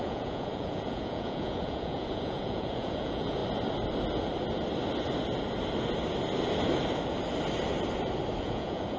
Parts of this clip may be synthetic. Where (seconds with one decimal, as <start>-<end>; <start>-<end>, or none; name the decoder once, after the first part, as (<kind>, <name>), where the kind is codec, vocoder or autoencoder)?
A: 0.0-3.4 (vocoder, Vocos); 8.4-9.0